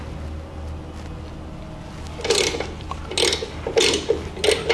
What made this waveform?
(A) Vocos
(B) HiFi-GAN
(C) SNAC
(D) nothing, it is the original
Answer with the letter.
D